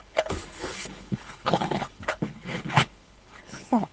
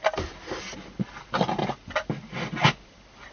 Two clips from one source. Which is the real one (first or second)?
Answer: second